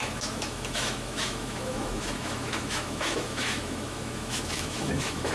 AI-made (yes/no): yes